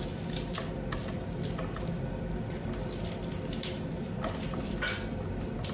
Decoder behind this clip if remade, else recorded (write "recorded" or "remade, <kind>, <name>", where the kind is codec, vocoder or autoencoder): recorded